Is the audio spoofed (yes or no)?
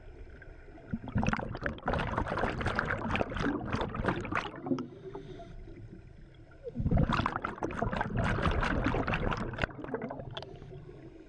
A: no